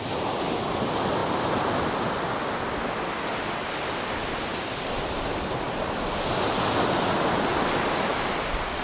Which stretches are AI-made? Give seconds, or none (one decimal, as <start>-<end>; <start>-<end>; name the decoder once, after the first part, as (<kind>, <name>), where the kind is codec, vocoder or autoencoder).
none